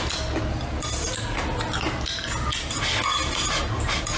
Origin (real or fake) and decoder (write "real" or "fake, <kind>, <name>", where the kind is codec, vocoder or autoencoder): real